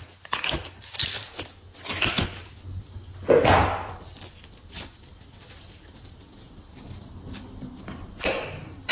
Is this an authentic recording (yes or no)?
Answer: yes